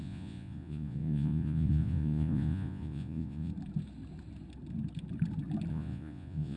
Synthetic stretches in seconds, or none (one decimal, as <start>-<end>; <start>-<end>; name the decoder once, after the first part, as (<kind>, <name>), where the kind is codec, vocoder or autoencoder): 0.0-3.5 (vocoder, Vocos); 5.7-6.6